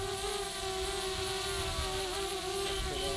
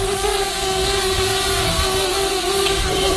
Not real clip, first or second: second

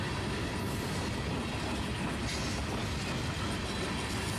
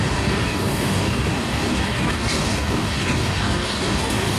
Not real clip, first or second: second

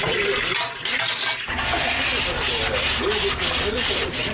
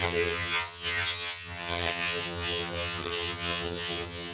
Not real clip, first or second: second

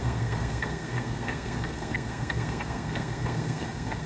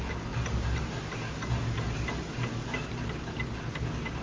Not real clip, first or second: first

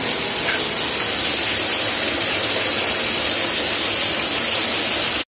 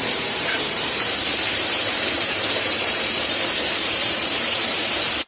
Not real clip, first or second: second